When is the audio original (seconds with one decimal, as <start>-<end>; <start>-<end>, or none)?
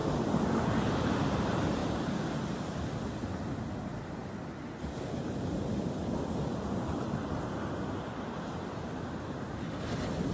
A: 0.6-1.8; 2.3-10.3